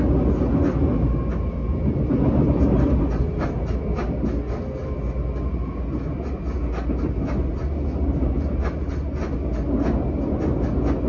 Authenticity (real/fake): real